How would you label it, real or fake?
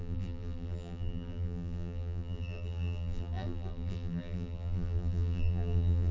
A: fake